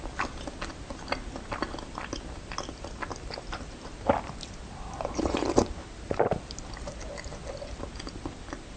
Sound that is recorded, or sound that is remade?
recorded